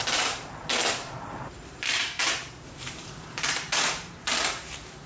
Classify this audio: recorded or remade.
remade